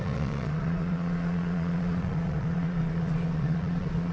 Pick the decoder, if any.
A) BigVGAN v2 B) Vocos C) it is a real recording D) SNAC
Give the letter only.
B